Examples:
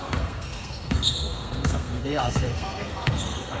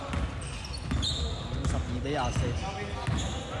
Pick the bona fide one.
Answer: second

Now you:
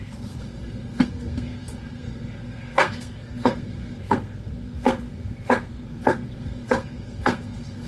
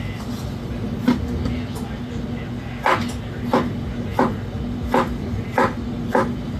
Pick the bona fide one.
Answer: second